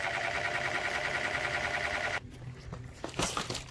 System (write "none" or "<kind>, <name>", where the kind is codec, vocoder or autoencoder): vocoder, BigVGAN v2